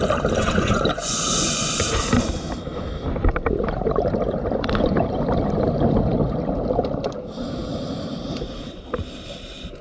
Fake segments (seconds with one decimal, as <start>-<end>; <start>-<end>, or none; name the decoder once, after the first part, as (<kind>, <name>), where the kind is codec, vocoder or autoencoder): 0.4-1.8 (vocoder, Vocos)